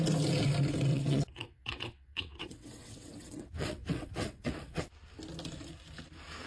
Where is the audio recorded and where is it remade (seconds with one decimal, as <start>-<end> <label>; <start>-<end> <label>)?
0.0-0.9 recorded; 0.9-4.8 remade; 4.8-6.5 recorded